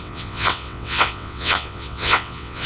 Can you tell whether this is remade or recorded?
remade